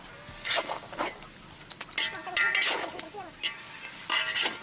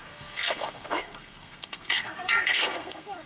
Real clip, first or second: first